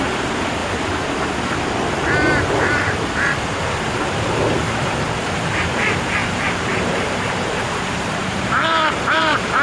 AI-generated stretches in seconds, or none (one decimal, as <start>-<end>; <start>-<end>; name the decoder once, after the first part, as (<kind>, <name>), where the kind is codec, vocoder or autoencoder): 0.0-0.6 (vocoder, BigVGAN v2); 2.4-9.6